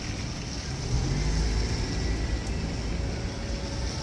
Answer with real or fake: real